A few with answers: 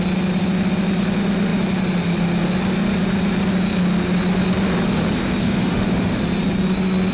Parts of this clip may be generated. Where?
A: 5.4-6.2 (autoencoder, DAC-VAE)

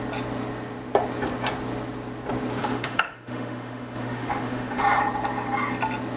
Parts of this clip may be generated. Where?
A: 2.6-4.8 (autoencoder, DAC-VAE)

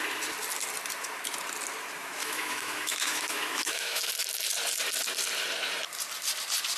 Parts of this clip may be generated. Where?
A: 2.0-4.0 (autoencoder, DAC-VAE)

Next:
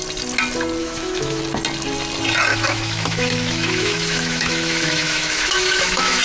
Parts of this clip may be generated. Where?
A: 0.8-1.4 (autoencoder, DAC-VAE); 2.5-6.2

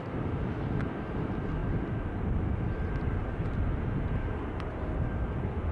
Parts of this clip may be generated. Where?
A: none

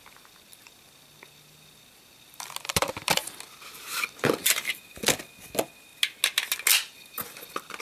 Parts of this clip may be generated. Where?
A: none